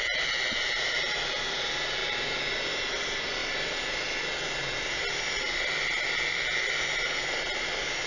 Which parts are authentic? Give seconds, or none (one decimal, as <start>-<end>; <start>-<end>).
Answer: none